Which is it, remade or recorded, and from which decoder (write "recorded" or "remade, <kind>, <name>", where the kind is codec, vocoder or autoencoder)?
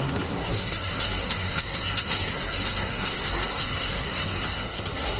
remade, codec, SNAC